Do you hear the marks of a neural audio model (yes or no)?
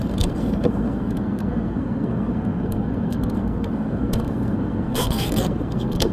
yes